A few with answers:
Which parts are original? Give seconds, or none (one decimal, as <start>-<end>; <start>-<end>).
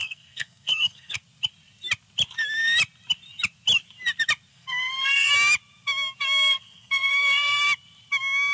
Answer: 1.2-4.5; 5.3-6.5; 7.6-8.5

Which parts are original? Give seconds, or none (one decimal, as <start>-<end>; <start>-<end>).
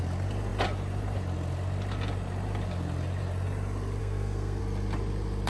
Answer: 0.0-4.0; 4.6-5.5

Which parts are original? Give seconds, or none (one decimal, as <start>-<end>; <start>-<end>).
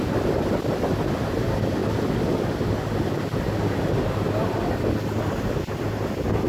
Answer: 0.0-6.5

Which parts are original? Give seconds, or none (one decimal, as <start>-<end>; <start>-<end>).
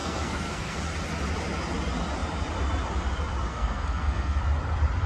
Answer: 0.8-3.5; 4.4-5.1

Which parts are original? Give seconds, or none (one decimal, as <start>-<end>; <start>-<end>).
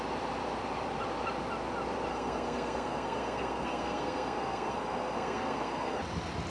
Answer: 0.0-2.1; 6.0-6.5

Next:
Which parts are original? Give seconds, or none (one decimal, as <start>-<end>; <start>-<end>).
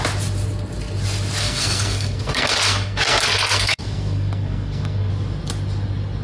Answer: 0.0-1.4; 5.1-6.2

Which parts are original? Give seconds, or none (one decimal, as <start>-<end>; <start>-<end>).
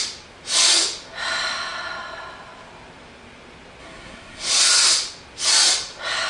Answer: 0.0-3.8; 4.5-6.3